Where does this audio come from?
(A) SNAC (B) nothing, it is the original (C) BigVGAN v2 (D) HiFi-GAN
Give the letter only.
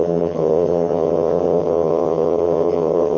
D